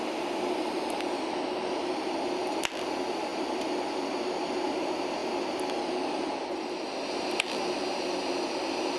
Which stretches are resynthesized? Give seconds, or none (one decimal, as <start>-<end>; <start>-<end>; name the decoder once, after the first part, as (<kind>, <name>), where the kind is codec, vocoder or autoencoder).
none